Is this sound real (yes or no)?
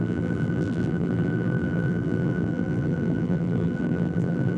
no